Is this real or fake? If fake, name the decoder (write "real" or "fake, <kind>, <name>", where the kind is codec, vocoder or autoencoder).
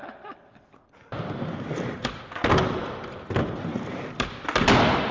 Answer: real